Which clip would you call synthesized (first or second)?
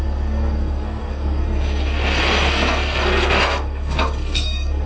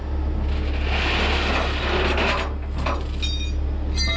first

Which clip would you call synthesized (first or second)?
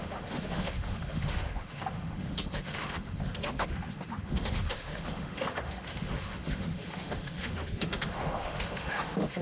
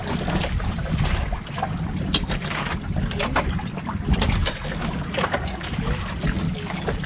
first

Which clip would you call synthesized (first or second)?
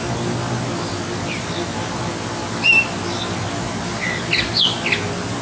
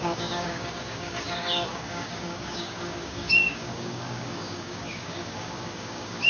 second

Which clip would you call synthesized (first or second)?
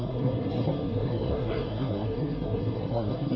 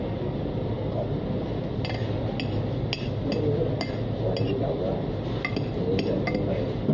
first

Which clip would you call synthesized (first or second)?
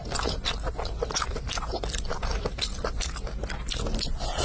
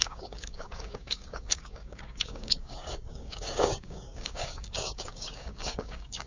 second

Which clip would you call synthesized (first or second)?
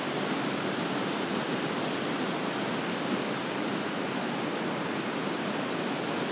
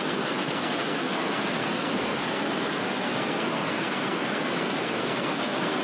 second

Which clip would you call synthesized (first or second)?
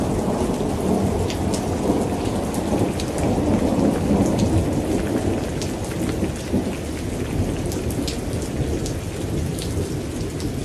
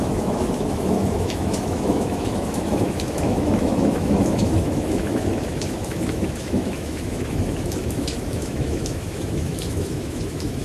second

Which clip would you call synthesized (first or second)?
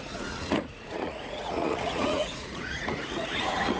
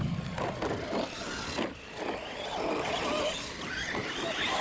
first